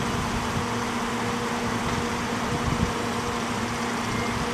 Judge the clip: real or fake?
real